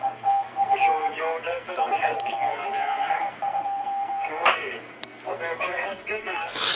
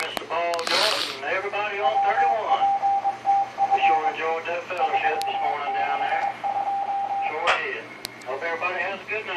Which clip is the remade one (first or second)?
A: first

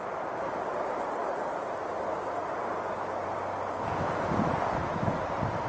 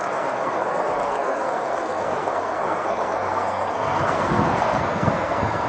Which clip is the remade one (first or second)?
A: second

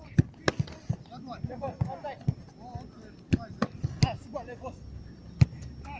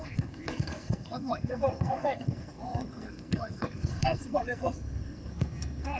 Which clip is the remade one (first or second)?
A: second